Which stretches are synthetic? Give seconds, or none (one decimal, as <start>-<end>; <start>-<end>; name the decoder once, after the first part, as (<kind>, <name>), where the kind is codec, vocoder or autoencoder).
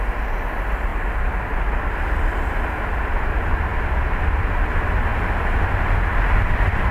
none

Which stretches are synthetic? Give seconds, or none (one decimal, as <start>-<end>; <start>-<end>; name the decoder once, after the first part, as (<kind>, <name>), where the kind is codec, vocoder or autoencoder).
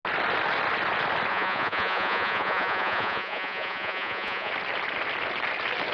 1.3-4.5 (vocoder, Vocos)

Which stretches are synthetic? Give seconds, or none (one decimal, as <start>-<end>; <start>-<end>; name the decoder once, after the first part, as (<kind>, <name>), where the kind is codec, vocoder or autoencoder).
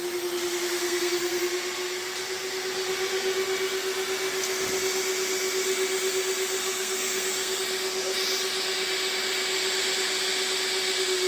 0.8-1.4 (codec, SNAC); 6.6-7.6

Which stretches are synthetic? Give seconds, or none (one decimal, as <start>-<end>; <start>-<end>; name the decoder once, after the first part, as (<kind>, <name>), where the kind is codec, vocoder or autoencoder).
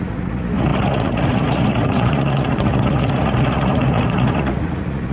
0.0-5.1 (vocoder, Vocos)